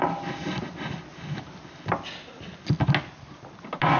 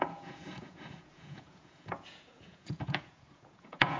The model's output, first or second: second